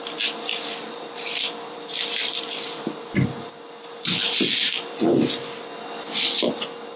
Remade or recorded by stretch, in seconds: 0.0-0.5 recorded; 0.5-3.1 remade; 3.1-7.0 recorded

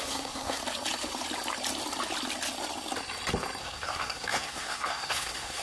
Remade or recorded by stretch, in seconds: 0.0-0.6 remade; 0.6-3.6 recorded; 3.6-5.6 remade

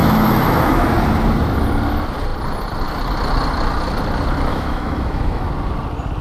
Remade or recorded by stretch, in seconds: 0.0-0.9 remade; 0.9-4.5 recorded; 4.5-5.5 remade; 5.5-6.2 recorded